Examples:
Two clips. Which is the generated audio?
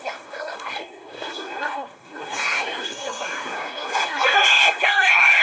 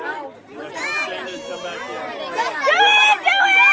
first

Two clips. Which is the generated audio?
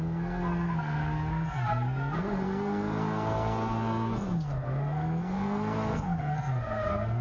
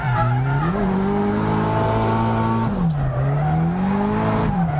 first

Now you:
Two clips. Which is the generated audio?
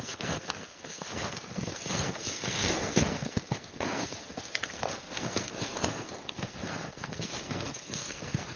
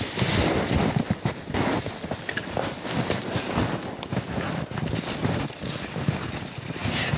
first